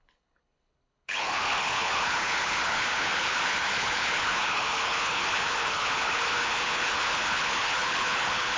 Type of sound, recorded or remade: remade